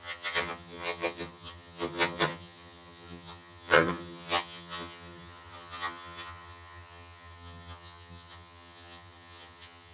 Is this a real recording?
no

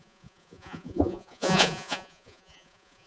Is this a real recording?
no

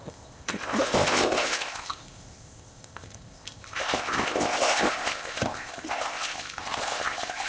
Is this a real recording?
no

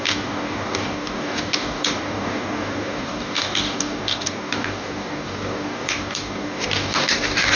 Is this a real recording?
no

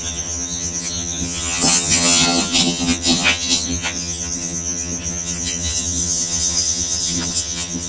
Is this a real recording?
no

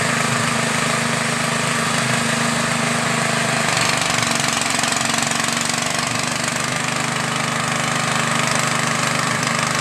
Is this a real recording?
yes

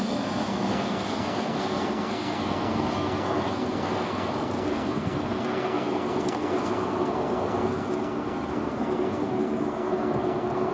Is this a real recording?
no